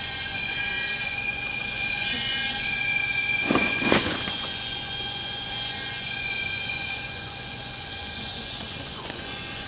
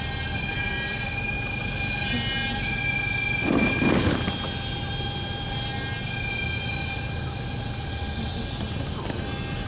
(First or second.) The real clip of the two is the second